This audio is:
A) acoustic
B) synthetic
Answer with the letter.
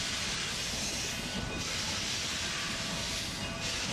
A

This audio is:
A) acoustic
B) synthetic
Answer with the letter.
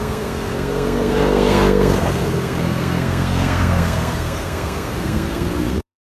B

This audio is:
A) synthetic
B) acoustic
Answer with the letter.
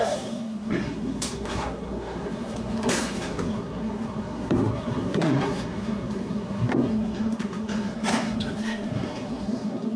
A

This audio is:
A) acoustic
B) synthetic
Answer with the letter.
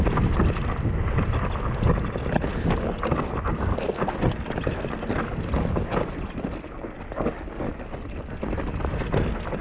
A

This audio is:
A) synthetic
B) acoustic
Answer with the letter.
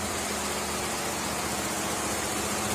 B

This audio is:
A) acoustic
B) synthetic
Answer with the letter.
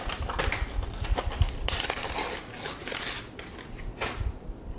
A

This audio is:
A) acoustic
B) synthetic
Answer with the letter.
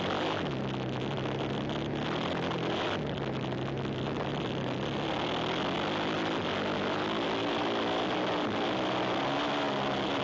A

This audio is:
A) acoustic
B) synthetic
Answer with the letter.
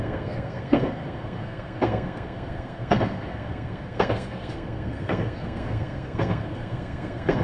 B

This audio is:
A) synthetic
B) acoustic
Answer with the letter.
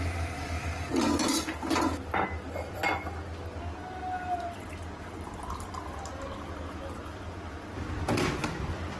B